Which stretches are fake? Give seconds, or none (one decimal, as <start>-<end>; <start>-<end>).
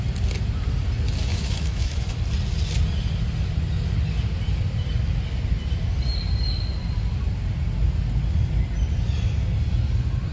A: 1.3-2.2